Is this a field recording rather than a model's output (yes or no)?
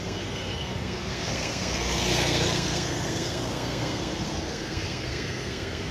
no